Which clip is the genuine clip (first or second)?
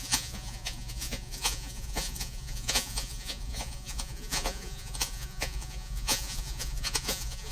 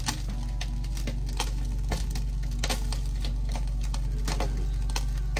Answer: second